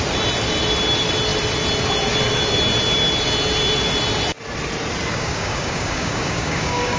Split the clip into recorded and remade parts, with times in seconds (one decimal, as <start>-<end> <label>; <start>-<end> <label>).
0.0-5.1 recorded; 5.1-7.0 remade